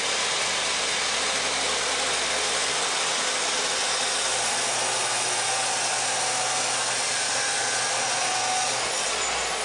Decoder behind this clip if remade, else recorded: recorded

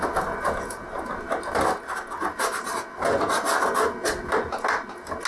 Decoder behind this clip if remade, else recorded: recorded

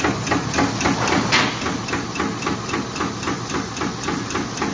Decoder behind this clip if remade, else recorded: recorded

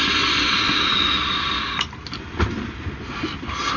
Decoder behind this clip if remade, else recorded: recorded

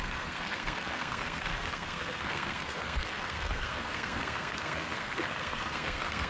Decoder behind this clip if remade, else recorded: remade, codec, SNAC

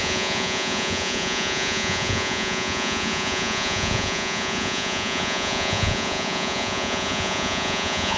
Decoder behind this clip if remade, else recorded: remade, vocoder, Vocos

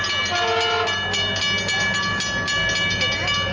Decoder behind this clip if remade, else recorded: recorded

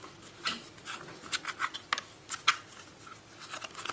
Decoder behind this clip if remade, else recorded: recorded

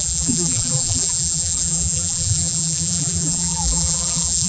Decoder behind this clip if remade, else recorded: remade, vocoder, BigVGAN v2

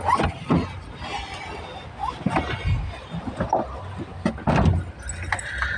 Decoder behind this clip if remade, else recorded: recorded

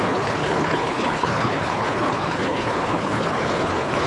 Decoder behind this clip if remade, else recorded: remade, codec, HILCodec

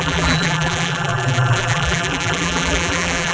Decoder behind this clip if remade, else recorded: remade, vocoder, BigVGAN v2